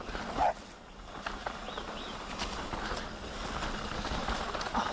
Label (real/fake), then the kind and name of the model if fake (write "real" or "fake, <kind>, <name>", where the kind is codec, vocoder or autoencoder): real